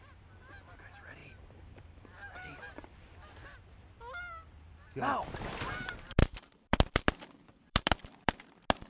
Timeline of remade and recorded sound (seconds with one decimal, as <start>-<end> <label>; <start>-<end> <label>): 0.0-1.2 recorded; 1.2-5.0 remade; 5.0-6.2 recorded; 6.2-8.4 remade; 8.4-8.9 recorded